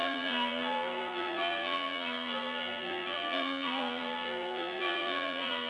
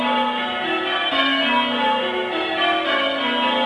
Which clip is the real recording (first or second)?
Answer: second